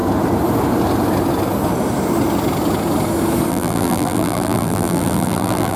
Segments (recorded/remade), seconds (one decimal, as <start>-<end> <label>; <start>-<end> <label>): 0.0-3.5 recorded; 3.5-5.8 remade